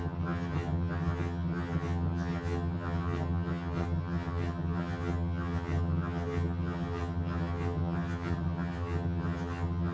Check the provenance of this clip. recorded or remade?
remade